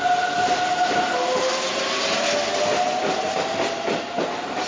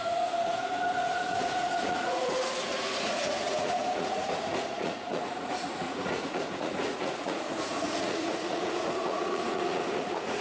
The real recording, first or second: first